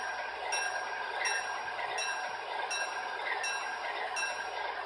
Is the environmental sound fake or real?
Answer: real